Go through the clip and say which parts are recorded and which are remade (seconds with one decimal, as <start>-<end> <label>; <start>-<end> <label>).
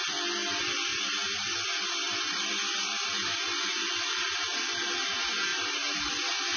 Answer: 0.0-0.9 recorded; 0.9-3.9 remade; 3.9-5.5 recorded; 5.5-6.1 remade; 6.1-6.6 recorded